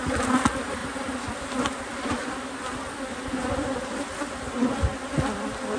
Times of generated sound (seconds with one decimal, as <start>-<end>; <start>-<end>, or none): 0.8-4.3